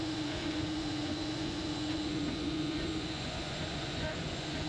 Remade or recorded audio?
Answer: remade